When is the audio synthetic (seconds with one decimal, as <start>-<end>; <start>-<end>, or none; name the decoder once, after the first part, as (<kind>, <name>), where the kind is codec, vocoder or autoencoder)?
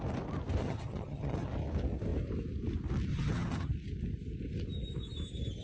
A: 0.6-1.5 (vocoder, HiFi-GAN); 3.1-3.7